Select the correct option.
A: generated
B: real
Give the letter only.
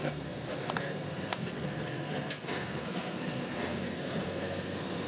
A